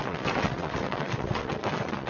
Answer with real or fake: fake